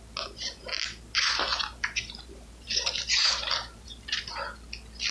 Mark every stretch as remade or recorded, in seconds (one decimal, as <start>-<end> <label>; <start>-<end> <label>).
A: 0.0-1.5 recorded; 1.5-4.3 remade; 4.3-5.1 recorded